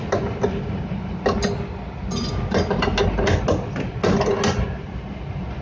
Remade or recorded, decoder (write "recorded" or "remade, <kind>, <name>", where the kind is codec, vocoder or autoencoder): recorded